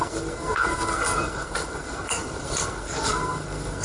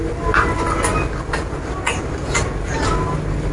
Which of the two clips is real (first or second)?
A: second